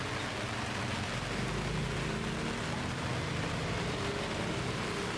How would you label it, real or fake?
real